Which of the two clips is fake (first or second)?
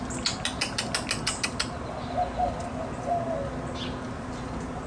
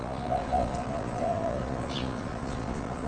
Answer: second